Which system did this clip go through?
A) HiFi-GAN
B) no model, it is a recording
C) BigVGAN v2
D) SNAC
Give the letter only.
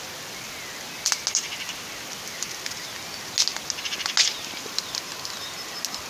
B